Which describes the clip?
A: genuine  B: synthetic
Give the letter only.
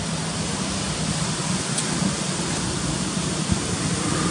A